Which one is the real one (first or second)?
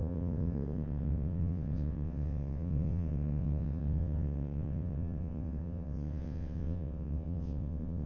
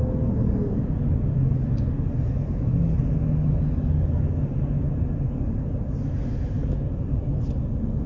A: second